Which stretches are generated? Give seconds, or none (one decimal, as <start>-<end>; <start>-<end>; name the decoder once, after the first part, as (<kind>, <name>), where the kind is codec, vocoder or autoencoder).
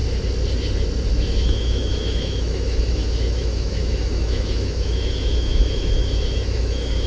1.2-7.1 (autoencoder, DAC-VAE)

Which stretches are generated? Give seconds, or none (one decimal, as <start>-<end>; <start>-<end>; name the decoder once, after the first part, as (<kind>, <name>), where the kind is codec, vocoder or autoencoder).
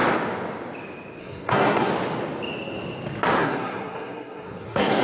1.2-1.9 (codec, SNAC); 3.4-5.0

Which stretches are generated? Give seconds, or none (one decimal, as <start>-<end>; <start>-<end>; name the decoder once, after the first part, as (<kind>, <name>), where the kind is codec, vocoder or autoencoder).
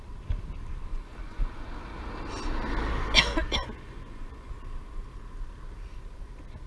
0.9-1.7 (vocoder, Vocos); 3.4-4.5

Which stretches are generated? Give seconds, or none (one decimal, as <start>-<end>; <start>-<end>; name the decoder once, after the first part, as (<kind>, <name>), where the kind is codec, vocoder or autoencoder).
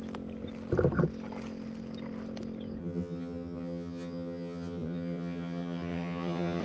2.8-6.6 (vocoder, HiFi-GAN)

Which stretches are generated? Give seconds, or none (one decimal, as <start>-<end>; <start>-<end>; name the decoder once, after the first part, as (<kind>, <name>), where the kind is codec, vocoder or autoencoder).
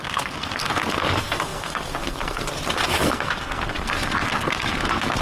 0.0-5.2 (codec, SNAC)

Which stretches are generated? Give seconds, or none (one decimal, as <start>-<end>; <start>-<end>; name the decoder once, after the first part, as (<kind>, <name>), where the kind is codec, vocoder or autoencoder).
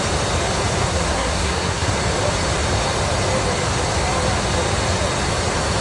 0.8-1.9 (codec, SNAC)